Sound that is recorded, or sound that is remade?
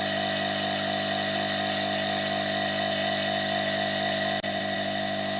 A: recorded